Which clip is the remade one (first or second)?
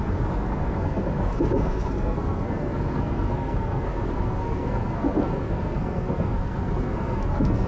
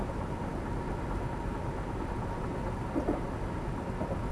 first